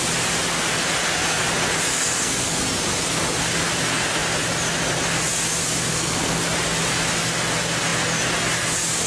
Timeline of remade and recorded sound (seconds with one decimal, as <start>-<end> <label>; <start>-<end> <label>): 0.0-1.9 recorded; 1.9-2.6 remade; 2.6-5.9 recorded; 5.9-6.4 remade; 6.4-9.1 recorded